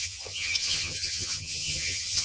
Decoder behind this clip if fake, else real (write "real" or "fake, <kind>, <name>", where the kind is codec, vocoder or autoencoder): fake, vocoder, HiFi-GAN